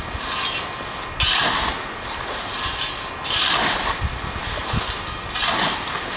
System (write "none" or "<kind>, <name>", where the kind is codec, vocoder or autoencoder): none